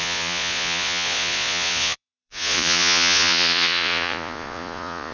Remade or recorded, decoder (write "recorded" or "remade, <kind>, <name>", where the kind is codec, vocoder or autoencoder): remade, vocoder, Vocos